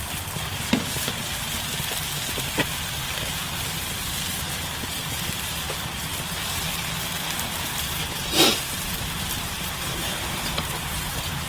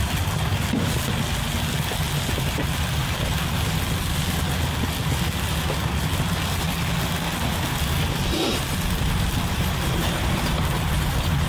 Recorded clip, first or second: second